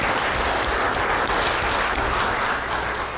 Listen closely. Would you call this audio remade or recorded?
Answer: recorded